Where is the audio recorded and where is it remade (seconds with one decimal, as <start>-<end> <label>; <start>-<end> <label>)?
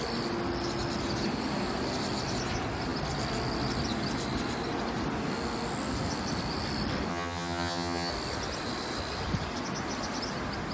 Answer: 0.0-7.1 recorded; 7.1-8.1 remade; 8.1-10.7 recorded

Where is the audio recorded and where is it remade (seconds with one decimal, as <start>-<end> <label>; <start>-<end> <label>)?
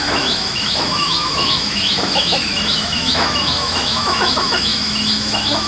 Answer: 0.0-5.7 remade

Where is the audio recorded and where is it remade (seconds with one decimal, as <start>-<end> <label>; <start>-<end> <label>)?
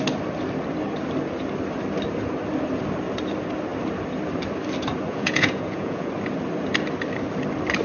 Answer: 0.0-5.1 recorded; 5.1-6.1 remade; 6.1-7.8 recorded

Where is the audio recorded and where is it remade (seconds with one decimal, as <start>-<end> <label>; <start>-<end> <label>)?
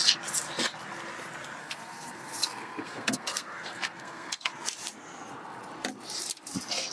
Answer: 0.0-1.6 recorded; 1.6-4.5 remade; 4.5-6.9 recorded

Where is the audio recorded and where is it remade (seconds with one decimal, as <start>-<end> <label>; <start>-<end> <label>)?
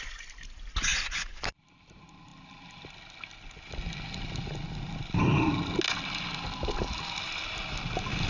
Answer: 0.0-8.3 recorded